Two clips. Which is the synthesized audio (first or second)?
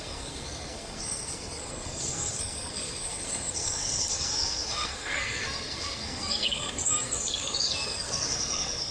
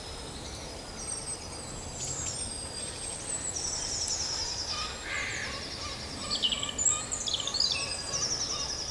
first